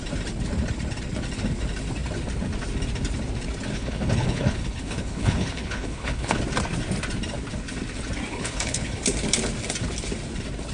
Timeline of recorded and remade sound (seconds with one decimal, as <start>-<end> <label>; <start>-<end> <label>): 0.0-3.7 recorded; 3.7-6.4 remade; 6.4-8.3 recorded; 8.3-9.0 remade; 9.0-10.7 recorded